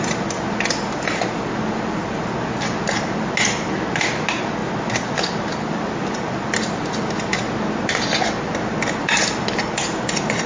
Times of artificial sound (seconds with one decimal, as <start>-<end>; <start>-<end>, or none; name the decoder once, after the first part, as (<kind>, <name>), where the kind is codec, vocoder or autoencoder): none